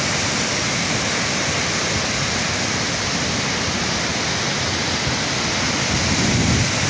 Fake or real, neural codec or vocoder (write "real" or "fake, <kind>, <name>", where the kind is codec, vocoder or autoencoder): real